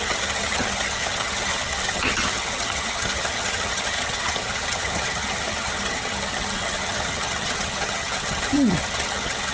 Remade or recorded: remade